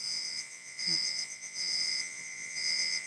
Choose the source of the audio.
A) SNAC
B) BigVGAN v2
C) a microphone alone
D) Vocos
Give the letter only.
D